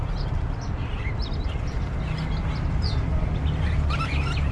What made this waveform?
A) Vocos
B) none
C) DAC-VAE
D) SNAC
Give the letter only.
B